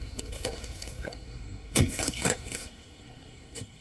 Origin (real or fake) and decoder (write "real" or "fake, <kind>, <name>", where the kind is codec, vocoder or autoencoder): fake, codec, SNAC